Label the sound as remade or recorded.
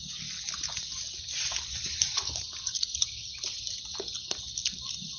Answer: recorded